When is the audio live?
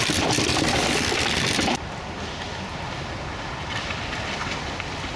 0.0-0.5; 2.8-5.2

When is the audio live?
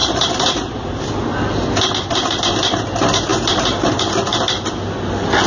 1.1-3.3; 3.9-5.5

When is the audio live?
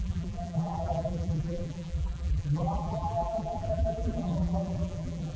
none